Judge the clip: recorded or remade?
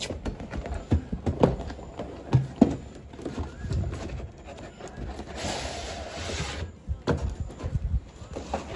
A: recorded